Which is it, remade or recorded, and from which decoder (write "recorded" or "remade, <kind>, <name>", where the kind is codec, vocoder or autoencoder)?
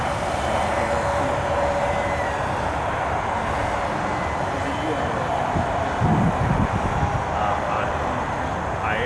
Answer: recorded